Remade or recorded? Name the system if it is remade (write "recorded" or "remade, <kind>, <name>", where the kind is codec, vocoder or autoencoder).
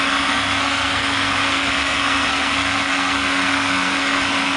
remade, codec, SNAC